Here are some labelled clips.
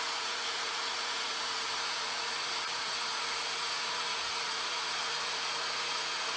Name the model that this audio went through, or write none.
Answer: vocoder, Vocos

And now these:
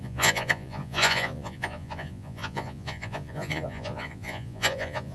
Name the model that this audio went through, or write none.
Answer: vocoder, Vocos